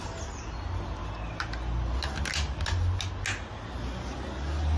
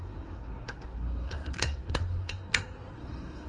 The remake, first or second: second